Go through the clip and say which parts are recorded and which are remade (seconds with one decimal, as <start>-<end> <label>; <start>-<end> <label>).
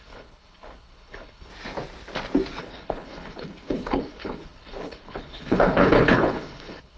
0.0-1.5 remade; 1.5-2.6 recorded; 2.6-7.0 remade